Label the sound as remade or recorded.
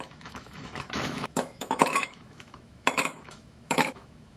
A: remade